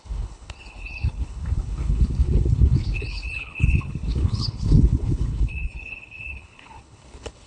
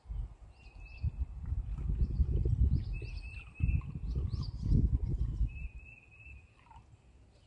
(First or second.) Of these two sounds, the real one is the second